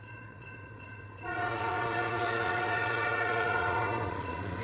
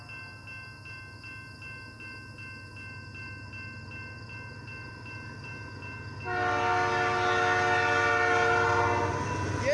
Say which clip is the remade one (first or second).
first